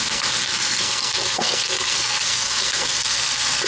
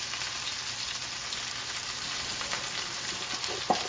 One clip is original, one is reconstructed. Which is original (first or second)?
second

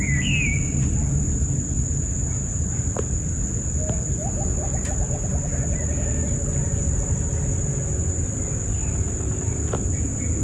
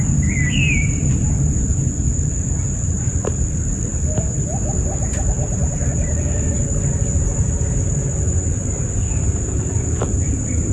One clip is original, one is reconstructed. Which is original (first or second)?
first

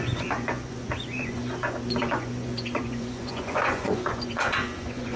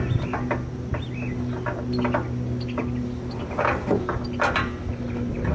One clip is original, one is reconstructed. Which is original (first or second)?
second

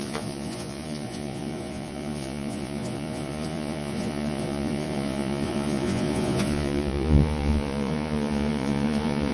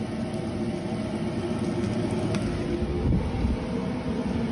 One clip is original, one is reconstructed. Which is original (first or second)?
second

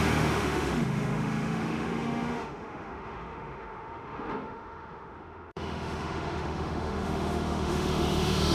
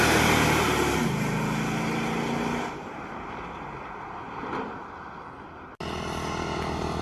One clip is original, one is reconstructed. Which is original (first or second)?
second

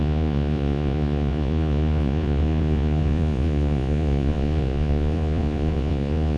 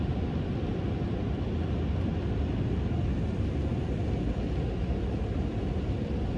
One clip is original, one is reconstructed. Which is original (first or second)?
second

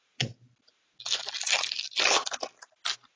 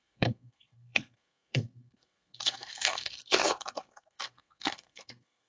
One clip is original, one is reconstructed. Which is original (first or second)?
first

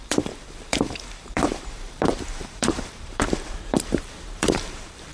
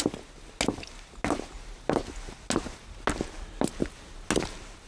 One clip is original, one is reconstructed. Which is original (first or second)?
second